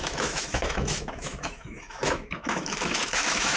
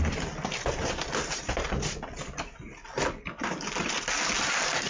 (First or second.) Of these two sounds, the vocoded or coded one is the first